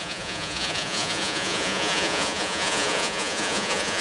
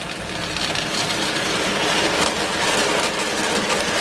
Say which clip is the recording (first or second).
second